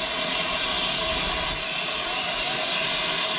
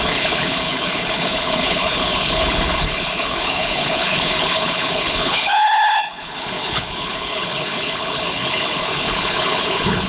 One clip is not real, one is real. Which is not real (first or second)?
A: second